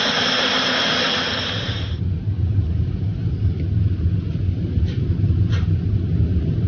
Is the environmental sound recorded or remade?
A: remade